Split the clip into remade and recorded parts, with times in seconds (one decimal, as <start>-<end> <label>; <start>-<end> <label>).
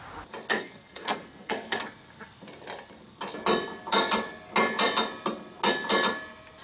0.0-0.5 recorded; 0.5-1.8 remade; 1.8-6.6 recorded